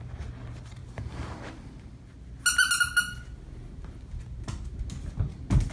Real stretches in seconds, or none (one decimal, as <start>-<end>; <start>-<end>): 0.0-5.7